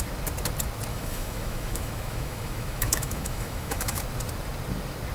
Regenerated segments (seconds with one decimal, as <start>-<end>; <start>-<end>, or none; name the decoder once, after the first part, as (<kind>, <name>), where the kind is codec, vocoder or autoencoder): 0.9-4.0 (autoencoder, DAC-VAE)